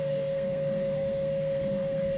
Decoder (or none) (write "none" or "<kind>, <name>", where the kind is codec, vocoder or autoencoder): codec, SNAC